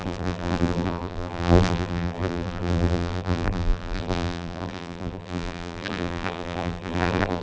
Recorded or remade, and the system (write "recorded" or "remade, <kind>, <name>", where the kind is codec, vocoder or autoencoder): remade, vocoder, BigVGAN v2